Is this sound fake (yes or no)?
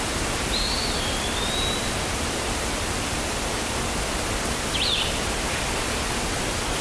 no